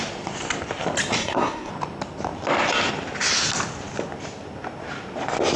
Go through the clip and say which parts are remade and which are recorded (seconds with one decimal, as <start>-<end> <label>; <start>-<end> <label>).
0.0-1.2 recorded; 1.2-1.7 remade; 1.7-5.6 recorded